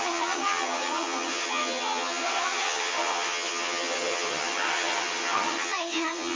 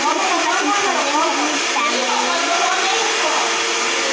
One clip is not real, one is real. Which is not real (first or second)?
first